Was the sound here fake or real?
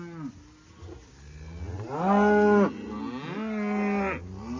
real